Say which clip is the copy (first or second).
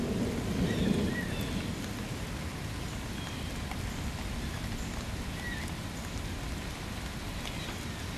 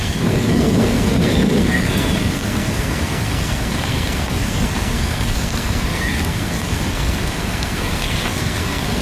second